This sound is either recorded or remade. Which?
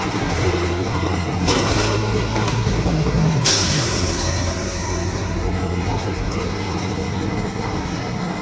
remade